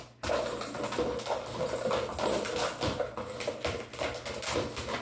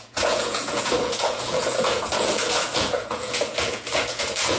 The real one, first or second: first